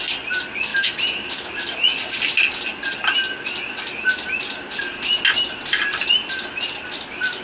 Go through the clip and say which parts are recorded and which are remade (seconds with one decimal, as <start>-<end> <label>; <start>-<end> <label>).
0.0-0.7 recorded; 0.7-1.6 remade; 1.6-7.4 recorded